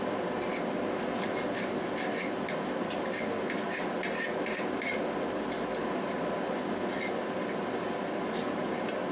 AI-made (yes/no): no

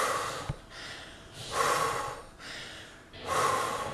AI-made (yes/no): no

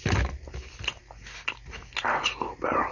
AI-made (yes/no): no